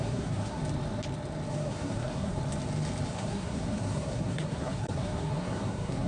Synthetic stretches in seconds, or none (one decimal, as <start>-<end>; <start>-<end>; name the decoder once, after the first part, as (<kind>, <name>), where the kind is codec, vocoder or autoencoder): 0.0-0.6 (codec, SNAC); 1.5-2.4; 3.1-6.1

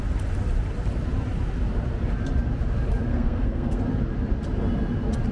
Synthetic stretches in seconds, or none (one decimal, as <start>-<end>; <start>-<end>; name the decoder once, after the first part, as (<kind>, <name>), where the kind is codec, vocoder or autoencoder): 3.1-3.8 (codec, SNAC)

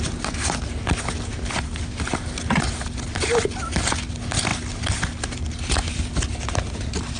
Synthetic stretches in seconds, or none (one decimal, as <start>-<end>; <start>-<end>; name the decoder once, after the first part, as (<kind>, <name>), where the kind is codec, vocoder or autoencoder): none

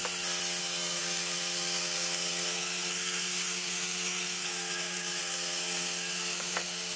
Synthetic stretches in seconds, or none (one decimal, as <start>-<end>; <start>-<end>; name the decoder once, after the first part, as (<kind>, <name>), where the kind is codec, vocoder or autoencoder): 0.6-7.0 (codec, SNAC)

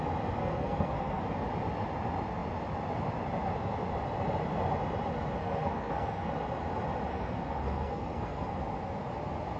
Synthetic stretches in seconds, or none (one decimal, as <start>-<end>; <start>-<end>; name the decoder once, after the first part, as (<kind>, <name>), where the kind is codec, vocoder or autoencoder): 0.4-1.2 (codec, SNAC); 5.4-6.3; 7.1-8.6

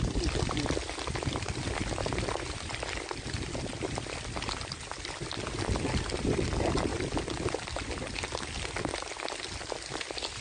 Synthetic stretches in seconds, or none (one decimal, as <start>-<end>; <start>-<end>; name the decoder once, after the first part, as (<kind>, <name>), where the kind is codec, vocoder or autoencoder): none

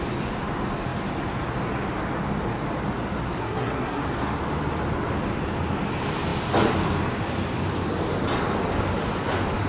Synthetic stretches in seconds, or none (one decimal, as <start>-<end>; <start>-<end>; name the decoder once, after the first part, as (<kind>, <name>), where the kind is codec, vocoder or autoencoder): 3.4-4.0 (codec, SNAC)